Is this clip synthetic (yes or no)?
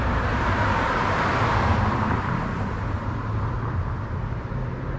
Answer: yes